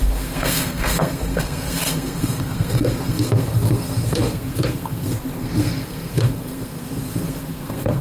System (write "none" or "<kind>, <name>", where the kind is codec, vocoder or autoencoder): codec, SNAC